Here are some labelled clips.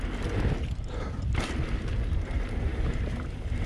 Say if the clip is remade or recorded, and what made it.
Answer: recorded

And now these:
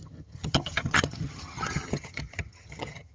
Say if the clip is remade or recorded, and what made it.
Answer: remade, vocoder, HiFi-GAN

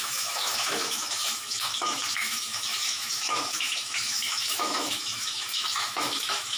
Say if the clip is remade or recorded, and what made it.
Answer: remade, autoencoder, DAC-VAE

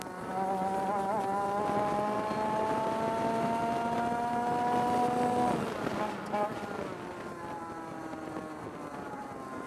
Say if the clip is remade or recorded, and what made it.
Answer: recorded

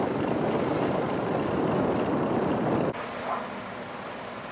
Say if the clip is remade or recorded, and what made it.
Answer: recorded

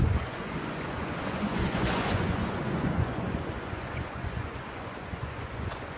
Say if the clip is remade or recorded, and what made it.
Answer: remade, vocoder, Vocos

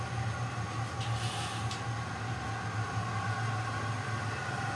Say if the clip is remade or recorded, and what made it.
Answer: recorded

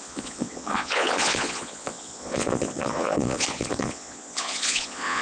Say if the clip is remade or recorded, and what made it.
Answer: remade, vocoder, Vocos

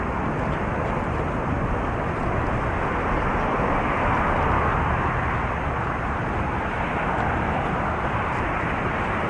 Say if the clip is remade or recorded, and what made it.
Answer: recorded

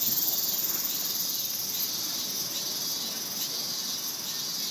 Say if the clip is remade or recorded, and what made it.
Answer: recorded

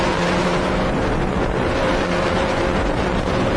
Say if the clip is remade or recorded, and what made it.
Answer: remade, vocoder, Vocos